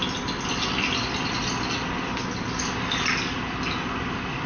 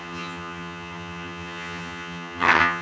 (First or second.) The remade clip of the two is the second